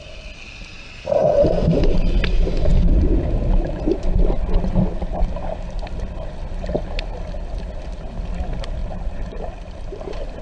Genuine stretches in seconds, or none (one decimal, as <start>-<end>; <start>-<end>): 0.0-0.7; 1.5-8.8